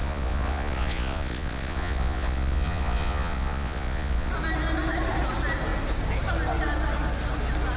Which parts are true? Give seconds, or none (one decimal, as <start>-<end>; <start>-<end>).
4.3-7.8